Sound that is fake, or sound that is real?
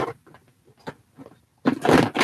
real